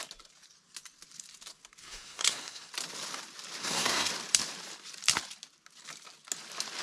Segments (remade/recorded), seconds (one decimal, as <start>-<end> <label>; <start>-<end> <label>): 0.0-1.8 recorded; 1.8-2.7 remade; 2.7-3.6 recorded; 3.6-4.1 remade; 4.1-6.8 recorded